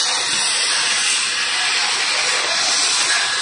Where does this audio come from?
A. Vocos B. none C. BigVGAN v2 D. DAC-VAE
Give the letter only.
B